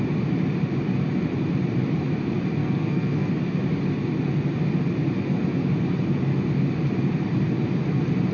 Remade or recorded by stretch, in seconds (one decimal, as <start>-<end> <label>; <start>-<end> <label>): 0.0-2.6 recorded; 2.6-3.3 remade; 3.3-8.3 recorded